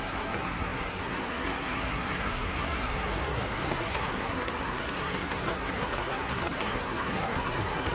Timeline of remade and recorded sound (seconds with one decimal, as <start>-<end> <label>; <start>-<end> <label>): 0.0-7.9 remade